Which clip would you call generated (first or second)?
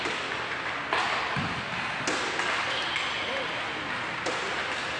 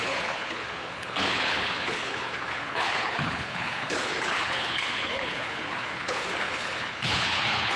second